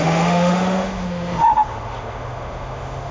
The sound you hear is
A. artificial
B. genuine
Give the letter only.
A